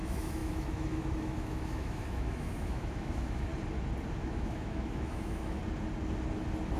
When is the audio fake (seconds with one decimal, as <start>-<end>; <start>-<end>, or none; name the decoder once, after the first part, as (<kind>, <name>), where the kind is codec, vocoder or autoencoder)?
0.0-3.5 (autoencoder, DAC-VAE); 4.1-5.6